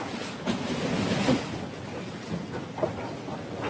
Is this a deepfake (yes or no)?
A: no